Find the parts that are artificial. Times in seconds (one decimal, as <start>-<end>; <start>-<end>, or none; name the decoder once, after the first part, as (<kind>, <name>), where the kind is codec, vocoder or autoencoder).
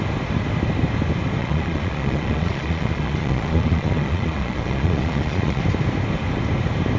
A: 1.4-5.6 (vocoder, Vocos)